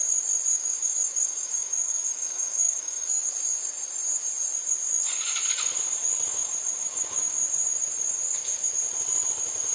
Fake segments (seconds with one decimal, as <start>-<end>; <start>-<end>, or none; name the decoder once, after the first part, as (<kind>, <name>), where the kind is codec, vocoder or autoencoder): 0.5-3.3 (codec, DAC); 6.8-7.4